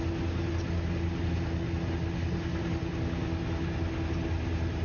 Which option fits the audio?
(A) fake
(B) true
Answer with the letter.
B